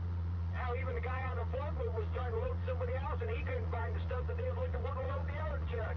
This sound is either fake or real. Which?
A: fake